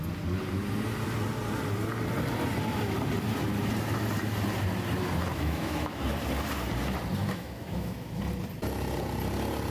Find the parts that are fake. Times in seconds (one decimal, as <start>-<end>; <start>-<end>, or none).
5.3-6.0; 7.2-8.2